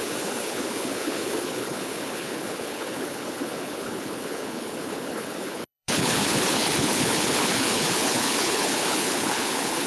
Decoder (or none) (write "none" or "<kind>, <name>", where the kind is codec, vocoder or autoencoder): codec, HILCodec